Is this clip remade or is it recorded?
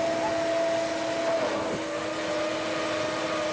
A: recorded